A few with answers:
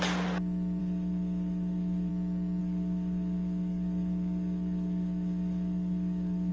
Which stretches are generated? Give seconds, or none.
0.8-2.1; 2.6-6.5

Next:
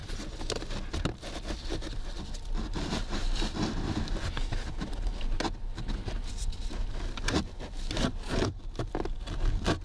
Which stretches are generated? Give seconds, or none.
none

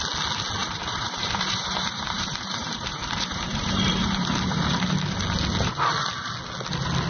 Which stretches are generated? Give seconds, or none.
0.6-4.9